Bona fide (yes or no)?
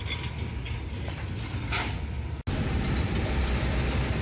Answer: yes